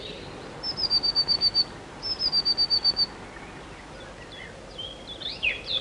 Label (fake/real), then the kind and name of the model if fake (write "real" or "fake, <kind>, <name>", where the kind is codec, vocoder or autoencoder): real